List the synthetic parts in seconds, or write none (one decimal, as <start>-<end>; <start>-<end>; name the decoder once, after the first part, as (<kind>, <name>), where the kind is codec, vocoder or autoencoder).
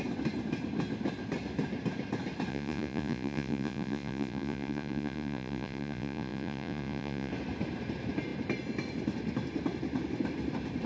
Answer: 2.5-7.3 (vocoder, Vocos)